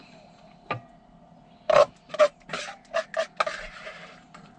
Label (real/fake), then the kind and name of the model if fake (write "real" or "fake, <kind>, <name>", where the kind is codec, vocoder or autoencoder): real